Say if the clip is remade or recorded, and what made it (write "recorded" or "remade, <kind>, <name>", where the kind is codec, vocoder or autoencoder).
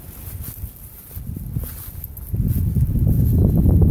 recorded